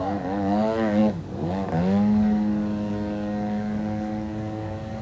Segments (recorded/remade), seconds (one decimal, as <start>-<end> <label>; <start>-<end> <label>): 0.0-5.0 remade